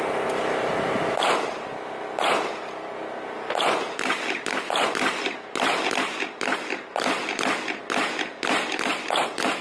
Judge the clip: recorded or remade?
recorded